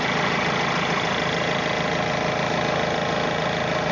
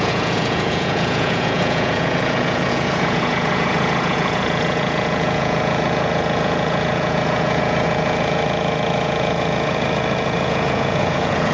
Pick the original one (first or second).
first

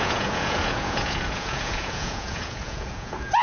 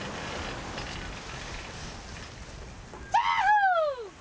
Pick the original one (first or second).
second